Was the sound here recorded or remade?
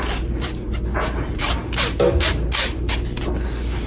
recorded